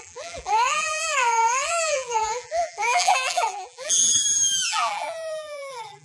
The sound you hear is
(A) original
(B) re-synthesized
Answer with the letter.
B